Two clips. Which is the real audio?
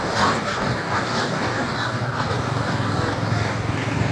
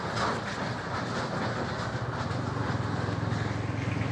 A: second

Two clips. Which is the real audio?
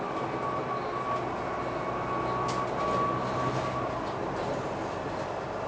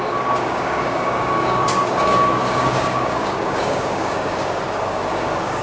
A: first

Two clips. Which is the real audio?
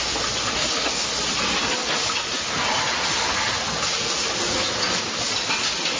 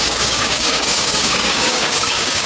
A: first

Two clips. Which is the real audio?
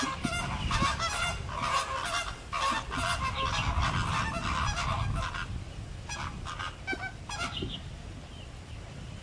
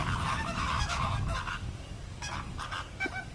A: first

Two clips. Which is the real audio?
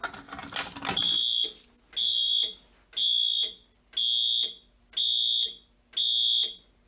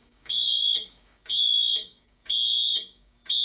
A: first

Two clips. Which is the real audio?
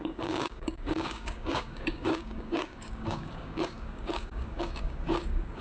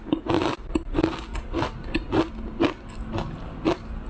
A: second